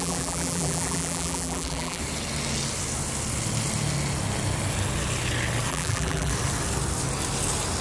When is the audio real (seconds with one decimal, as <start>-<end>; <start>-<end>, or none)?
2.0-5.7; 6.3-7.8